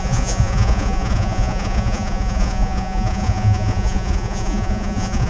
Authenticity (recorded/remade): remade